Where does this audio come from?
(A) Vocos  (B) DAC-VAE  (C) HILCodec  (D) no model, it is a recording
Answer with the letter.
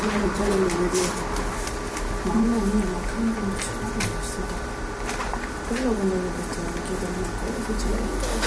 D